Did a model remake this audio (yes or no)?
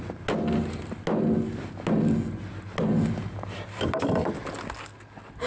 no